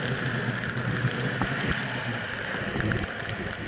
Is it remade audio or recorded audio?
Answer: recorded